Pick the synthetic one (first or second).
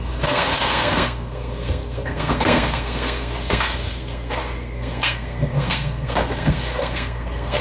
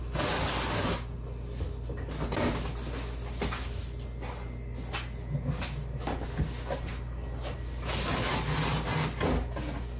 first